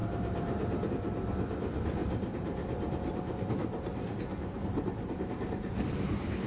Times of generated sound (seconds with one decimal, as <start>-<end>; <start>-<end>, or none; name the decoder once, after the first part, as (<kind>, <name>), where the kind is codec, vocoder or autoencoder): 0.0-0.9 (vocoder, BigVGAN v2); 2.0-5.2

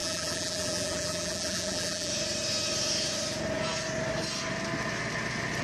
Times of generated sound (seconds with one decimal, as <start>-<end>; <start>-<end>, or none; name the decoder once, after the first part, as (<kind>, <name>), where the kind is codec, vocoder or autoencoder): 0.0-2.1 (vocoder, BigVGAN v2)

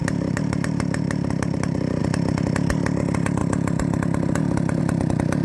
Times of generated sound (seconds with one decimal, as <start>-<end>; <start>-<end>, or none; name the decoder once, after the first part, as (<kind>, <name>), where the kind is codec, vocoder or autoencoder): 0.0-2.0 (vocoder, BigVGAN v2)

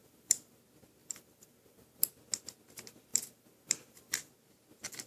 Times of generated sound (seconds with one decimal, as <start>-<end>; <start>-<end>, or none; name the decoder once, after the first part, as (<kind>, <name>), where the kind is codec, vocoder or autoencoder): 0.0-0.6 (vocoder, BigVGAN v2); 1.0-2.0; 3.1-4.3

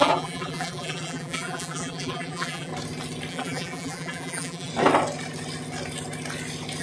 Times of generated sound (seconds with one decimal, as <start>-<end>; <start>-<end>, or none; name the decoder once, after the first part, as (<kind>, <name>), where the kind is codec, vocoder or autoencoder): 0.0-2.7 (vocoder, BigVGAN v2); 3.3-4.7

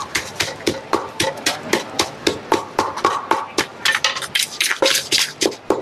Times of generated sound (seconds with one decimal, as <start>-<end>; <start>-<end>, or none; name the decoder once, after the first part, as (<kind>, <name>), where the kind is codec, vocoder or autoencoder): 0.0-1.6 (vocoder, BigVGAN v2)

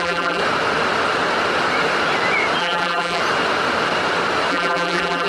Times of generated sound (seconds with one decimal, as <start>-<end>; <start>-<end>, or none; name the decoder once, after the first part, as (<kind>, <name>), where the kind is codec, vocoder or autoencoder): 0.0-0.4 (vocoder, BigVGAN v2); 2.6-3.2; 4.5-5.3